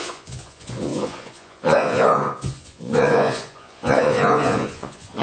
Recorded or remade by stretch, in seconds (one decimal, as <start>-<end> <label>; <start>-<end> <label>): 0.0-5.2 remade